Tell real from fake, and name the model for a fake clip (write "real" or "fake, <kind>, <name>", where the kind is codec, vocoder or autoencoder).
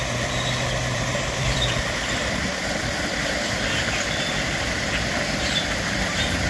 fake, vocoder, BigVGAN v2